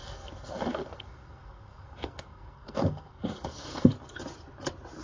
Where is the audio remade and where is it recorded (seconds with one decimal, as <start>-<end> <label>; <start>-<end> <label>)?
0.0-3.9 remade; 3.9-5.0 recorded